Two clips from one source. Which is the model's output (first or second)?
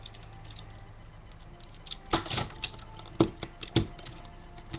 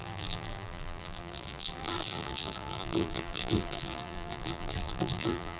second